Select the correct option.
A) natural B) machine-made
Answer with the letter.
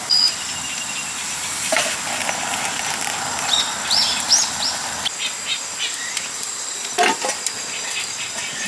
A